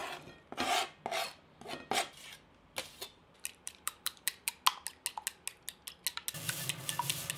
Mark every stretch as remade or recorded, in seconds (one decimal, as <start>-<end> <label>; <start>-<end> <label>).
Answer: 0.0-3.2 recorded; 3.2-4.5 remade; 4.5-7.4 recorded